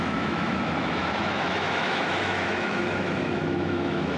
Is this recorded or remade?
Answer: remade